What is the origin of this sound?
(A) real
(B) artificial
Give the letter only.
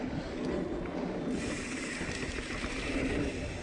A